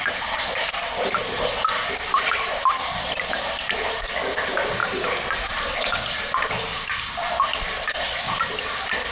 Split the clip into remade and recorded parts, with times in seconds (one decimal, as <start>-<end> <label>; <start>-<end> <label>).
0.0-9.1 recorded